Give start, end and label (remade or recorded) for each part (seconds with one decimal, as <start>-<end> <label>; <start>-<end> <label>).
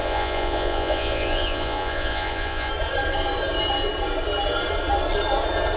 0.0-2.7 remade; 2.7-5.8 recorded